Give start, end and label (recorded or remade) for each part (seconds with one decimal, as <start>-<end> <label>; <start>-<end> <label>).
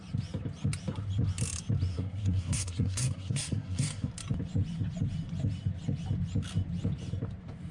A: 0.0-1.9 recorded; 1.9-4.1 remade; 4.1-7.7 recorded